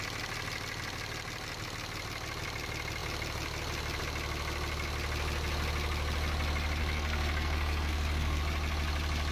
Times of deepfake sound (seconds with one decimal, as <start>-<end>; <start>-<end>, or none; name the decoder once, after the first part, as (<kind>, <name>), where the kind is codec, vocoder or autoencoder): 6.8-8.4 (codec, SNAC)